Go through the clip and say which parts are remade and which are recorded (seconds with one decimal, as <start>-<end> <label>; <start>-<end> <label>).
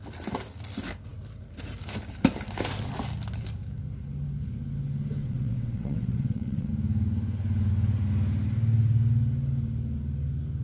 0.0-5.2 recorded; 5.2-6.7 remade; 6.7-10.6 recorded